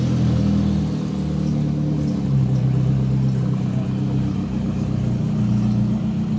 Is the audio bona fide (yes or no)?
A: yes